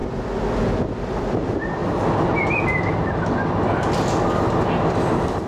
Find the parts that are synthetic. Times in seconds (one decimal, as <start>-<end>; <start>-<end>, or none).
1.2-1.8; 5.1-5.5